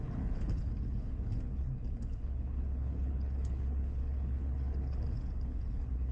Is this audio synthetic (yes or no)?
yes